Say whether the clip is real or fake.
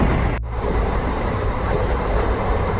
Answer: fake